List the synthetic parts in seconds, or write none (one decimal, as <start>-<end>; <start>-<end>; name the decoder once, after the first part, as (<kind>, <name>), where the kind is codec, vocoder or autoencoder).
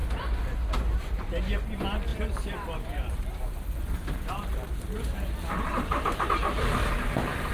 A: 2.1-6.3 (vocoder, BigVGAN v2)